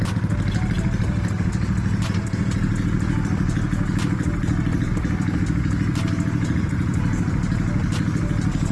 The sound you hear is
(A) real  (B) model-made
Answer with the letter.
A